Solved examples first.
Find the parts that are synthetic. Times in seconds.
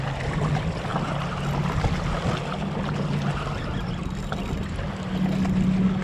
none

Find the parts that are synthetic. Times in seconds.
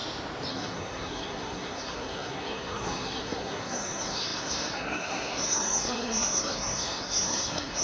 0.5-7.8 (codec, SNAC)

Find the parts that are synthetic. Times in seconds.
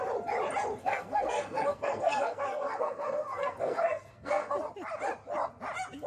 0.8-4.5 (codec, SNAC)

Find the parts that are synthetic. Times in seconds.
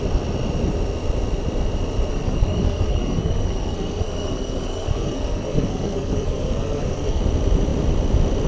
2.1-7.2 (codec, SNAC)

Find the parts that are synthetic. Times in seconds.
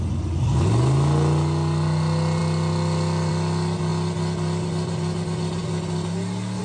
none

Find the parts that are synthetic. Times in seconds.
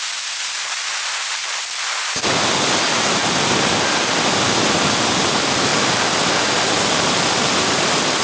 none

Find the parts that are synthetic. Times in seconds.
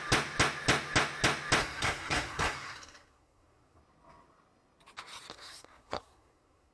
1.6-3.8 (codec, SNAC); 5.3-6.7